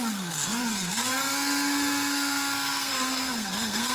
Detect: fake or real fake